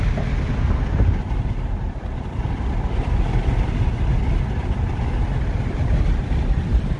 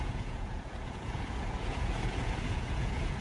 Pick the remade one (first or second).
second